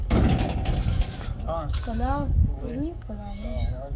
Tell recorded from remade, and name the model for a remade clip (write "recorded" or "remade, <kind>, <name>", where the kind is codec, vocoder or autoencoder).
remade, codec, DAC